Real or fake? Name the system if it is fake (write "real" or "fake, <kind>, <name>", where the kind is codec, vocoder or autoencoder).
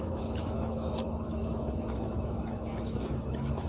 fake, autoencoder, DAC-VAE